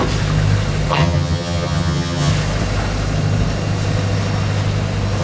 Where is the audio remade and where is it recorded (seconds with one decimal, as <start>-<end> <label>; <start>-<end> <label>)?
0.0-0.9 recorded; 0.9-2.3 remade; 2.3-5.2 recorded